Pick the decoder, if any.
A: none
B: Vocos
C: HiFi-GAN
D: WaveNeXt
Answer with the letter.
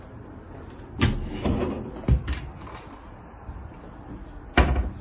A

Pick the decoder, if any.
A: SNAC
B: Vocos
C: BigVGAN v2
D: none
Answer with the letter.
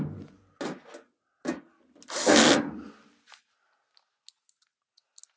D